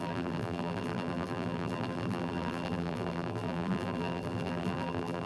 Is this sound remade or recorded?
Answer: remade